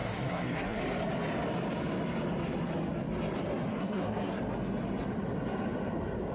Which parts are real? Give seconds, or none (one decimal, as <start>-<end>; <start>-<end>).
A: 0.8-3.7; 4.4-6.3